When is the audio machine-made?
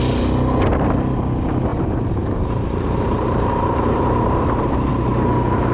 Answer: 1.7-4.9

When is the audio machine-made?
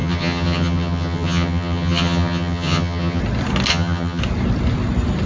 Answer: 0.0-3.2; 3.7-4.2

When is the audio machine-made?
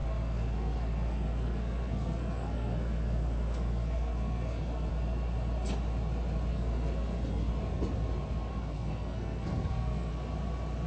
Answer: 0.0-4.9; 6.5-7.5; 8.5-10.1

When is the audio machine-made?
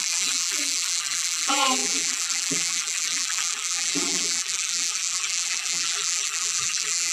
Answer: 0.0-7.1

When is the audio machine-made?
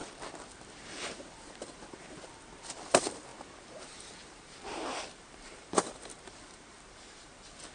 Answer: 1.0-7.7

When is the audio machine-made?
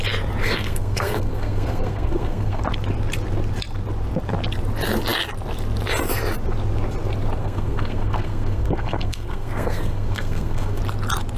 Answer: 0.4-2.6; 7.4-10.8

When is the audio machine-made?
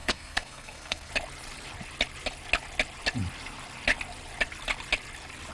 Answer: 0.0-1.1